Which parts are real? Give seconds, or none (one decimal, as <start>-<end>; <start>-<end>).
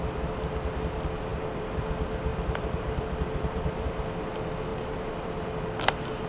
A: 0.0-1.3; 1.8-2.3; 3.9-4.7; 5.5-6.3